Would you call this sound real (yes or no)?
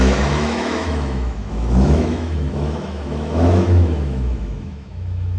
no